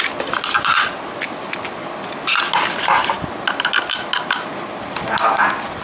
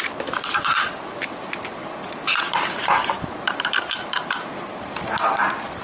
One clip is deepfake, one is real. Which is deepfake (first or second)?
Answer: second